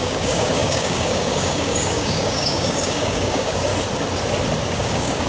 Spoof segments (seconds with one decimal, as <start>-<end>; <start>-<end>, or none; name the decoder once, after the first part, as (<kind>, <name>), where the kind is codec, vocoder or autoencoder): 0.0-3.7 (codec, DAC); 4.7-5.3